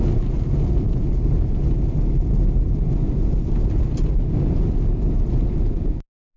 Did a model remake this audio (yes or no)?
no